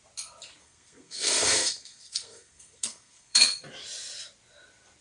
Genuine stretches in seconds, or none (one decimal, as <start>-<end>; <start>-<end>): 0.0-0.6; 3.6-5.0